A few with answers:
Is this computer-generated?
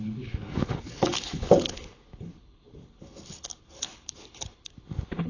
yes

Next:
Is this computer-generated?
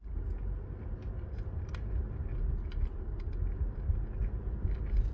no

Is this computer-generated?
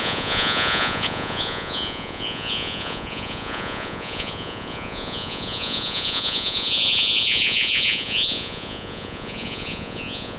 yes